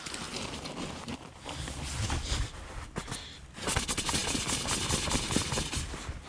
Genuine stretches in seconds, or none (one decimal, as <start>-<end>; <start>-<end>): 0.0-6.3

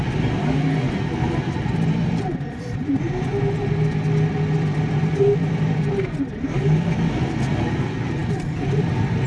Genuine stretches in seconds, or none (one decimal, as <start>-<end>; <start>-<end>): 0.0-9.3